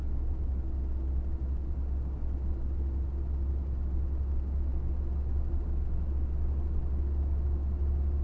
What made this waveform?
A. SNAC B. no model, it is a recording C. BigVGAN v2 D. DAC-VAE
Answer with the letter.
B